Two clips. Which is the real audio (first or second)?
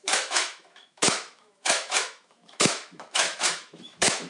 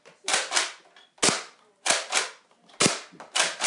second